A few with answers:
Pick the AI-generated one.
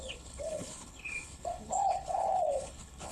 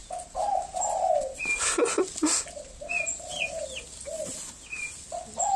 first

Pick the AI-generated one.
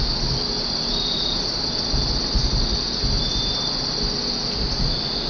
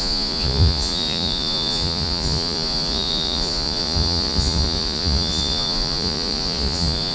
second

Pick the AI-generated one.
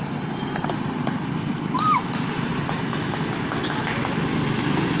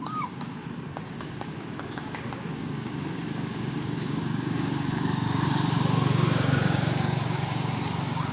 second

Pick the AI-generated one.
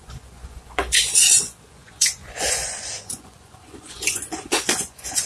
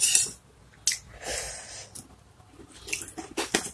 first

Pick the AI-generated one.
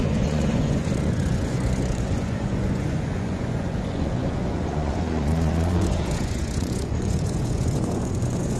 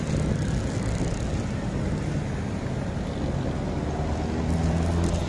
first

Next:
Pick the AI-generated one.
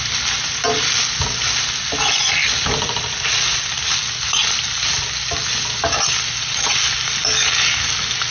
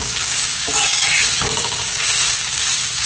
second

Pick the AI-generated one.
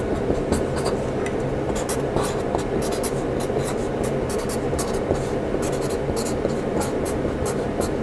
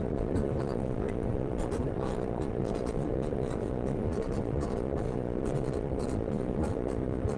second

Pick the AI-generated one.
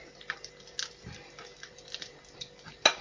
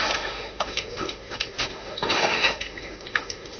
second